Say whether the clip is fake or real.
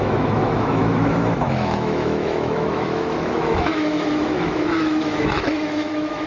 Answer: fake